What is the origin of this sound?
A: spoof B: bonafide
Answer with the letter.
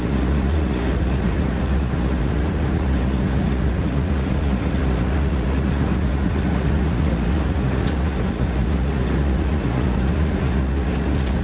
A